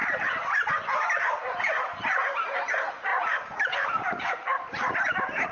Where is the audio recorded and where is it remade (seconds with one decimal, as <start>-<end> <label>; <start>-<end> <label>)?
0.0-0.5 remade; 0.5-3.1 recorded; 3.1-4.3 remade; 4.3-5.5 recorded